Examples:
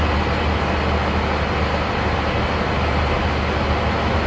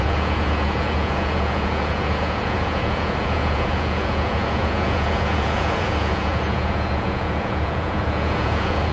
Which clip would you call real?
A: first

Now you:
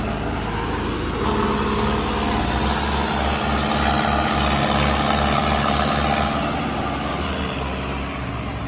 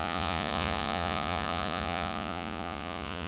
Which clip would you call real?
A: first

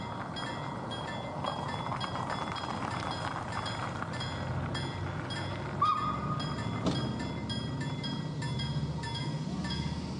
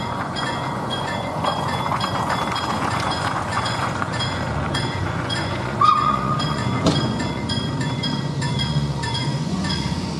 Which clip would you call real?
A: first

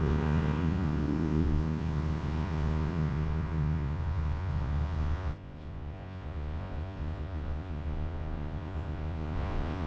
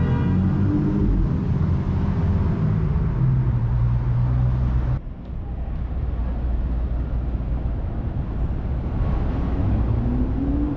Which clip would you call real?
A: second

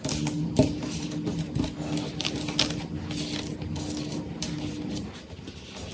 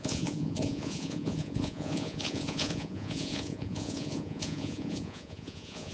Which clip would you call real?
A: first